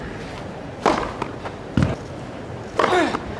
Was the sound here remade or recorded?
recorded